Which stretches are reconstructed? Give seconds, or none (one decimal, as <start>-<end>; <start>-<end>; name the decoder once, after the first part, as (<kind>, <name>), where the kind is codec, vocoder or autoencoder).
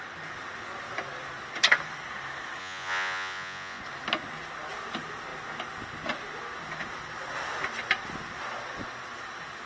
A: 2.6-3.8 (vocoder, Vocos)